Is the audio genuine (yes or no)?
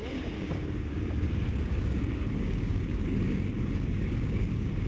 no